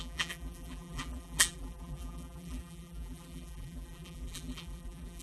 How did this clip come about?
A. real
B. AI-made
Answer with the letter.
B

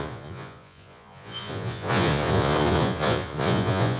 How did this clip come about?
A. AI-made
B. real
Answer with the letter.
A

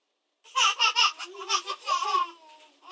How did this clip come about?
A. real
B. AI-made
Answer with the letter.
A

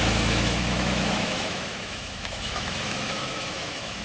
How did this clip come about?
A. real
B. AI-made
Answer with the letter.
B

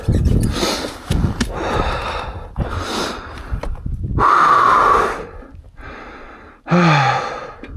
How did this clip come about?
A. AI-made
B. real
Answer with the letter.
B